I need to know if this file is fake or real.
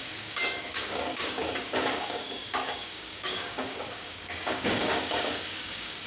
fake